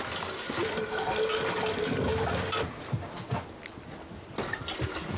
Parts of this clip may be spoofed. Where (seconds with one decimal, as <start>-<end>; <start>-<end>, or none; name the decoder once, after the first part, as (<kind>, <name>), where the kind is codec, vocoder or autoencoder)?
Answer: none